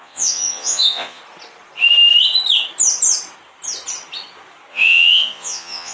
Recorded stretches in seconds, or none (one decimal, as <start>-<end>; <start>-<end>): 1.2-4.7